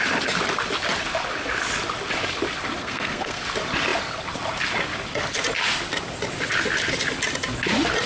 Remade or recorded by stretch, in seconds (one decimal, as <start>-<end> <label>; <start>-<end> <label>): 0.0-2.8 recorded; 2.8-3.4 remade; 3.4-8.1 recorded